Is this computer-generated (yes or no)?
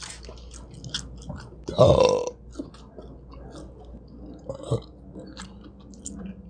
no